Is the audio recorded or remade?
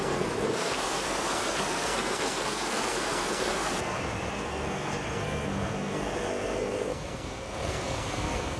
remade